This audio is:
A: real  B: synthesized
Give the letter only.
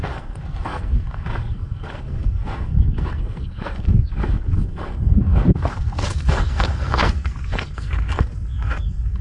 B